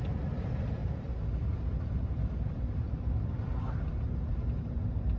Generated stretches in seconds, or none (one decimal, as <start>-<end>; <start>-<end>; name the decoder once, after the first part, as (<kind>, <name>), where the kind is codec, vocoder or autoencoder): none